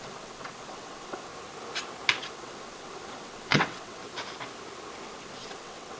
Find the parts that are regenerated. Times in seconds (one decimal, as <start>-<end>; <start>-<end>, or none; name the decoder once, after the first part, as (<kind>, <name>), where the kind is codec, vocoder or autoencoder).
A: 0.0-1.3 (vocoder, WaveNeXt); 2.2-4.0; 5.0-6.0